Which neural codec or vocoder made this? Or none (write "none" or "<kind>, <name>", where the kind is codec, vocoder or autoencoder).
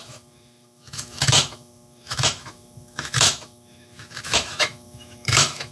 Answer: autoencoder, DAC-VAE